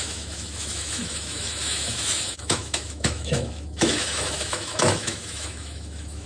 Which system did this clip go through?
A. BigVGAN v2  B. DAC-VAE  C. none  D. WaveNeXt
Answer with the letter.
B